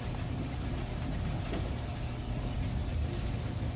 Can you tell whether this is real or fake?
real